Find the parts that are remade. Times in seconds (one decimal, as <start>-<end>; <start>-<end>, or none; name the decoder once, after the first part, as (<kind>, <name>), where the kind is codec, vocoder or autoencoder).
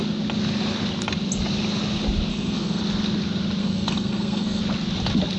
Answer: 2.3-2.8 (codec, SNAC); 3.6-4.6